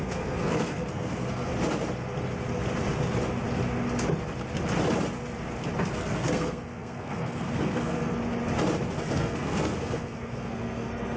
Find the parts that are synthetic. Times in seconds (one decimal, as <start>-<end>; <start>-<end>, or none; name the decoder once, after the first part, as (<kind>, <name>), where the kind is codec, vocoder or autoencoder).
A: 0.0-1.5 (codec, SNAC); 5.9-8.2; 8.9-11.2